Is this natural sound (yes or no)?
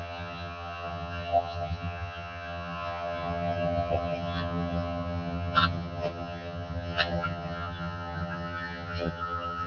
no